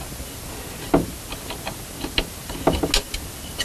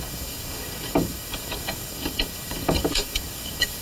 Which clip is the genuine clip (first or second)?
first